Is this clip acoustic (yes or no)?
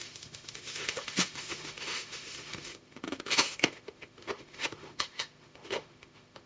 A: no